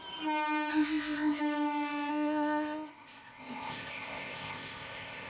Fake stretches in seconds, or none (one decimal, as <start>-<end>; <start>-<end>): 0.7-1.4; 2.1-5.3